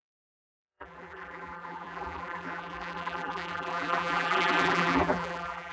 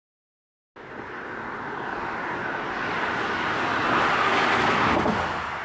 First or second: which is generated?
first